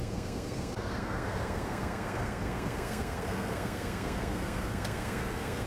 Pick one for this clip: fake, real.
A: fake